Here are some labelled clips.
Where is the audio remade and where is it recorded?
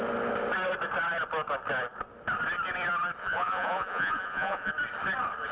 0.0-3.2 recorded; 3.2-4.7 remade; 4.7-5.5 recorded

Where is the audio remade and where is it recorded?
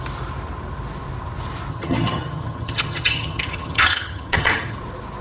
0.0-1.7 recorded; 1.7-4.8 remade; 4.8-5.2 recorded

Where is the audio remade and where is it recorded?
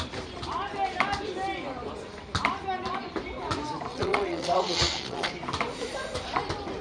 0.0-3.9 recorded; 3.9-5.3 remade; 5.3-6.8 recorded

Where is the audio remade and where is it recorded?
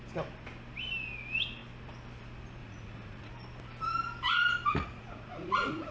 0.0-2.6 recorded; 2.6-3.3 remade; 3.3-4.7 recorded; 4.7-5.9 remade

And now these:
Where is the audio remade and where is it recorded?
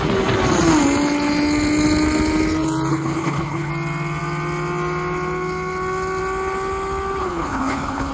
0.0-2.9 recorded; 2.9-3.7 remade; 3.7-7.2 recorded; 7.2-8.1 remade